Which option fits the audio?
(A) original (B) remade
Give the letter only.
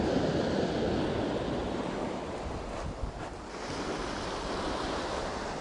A